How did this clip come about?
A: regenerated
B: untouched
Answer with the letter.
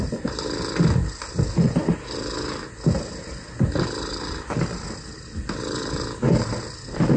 B